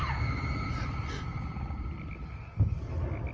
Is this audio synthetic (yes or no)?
no